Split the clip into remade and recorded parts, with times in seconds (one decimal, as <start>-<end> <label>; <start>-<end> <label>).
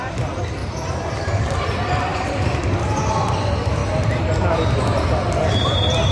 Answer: 0.0-0.6 recorded; 0.6-1.7 remade; 1.7-2.1 recorded; 2.1-3.0 remade; 3.0-6.1 recorded